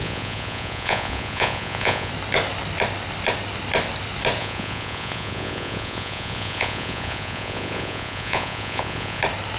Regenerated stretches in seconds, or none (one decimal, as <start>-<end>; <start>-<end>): 0.0-2.1; 4.4-9.2